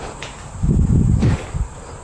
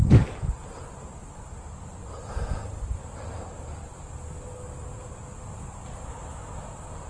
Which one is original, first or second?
second